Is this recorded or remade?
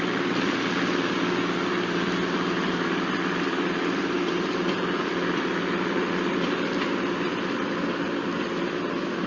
recorded